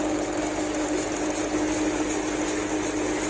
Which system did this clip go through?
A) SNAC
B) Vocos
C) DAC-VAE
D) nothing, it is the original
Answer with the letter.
D